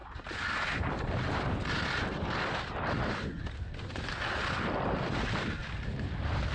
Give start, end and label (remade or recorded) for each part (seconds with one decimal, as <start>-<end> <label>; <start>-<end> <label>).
0.0-6.5 recorded